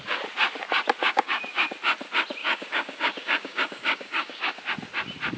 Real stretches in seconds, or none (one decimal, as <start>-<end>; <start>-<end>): 0.0-1.0; 1.7-2.4; 4.6-5.4